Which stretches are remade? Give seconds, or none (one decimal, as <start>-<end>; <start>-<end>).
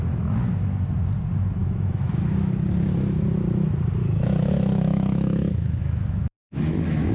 1.6-2.5; 4.0-7.1